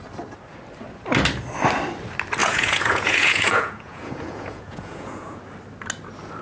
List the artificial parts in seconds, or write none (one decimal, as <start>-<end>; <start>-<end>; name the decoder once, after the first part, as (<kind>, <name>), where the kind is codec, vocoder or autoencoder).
2.4-5.4 (vocoder, Vocos)